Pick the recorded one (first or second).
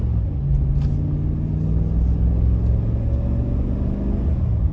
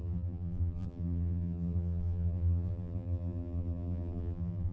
first